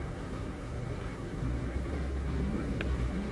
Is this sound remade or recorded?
remade